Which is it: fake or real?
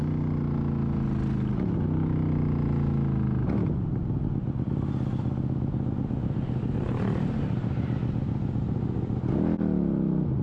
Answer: real